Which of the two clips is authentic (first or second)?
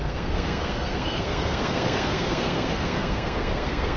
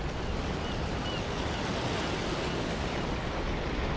second